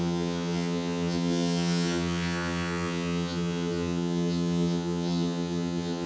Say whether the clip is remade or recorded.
remade